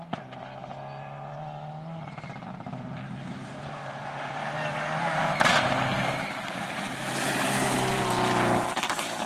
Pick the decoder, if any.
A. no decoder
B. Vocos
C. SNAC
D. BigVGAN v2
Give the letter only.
A